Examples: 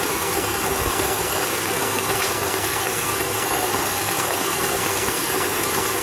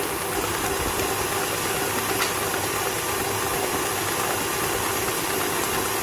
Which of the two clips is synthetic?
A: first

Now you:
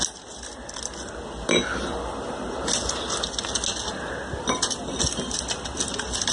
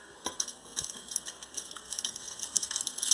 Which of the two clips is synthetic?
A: second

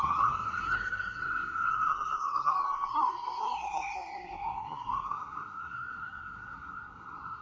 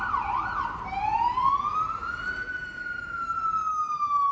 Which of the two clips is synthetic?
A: first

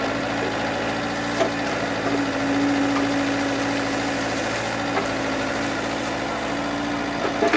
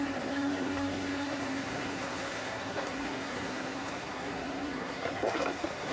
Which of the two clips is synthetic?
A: second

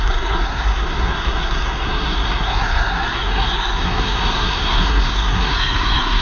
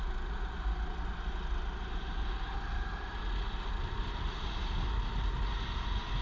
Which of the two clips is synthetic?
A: first